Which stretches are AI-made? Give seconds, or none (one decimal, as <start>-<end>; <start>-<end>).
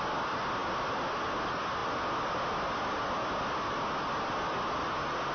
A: none